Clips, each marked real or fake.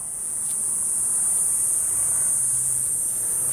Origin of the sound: real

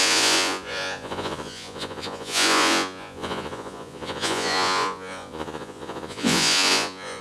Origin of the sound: fake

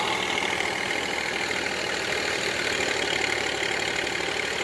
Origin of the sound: real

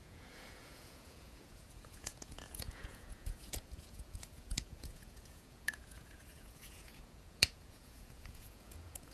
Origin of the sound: fake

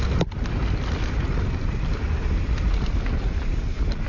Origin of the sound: real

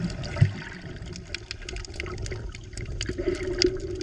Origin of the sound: real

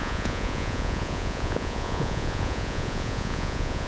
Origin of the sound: fake